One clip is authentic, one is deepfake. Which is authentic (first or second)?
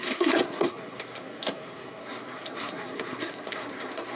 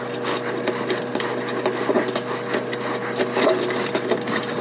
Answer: second